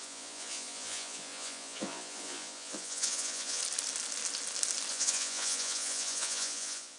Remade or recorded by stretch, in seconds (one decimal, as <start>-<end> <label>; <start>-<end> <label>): 0.0-3.6 remade; 3.6-4.9 recorded; 4.9-7.0 remade